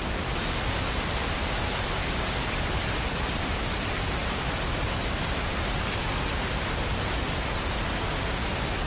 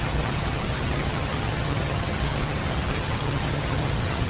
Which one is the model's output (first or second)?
second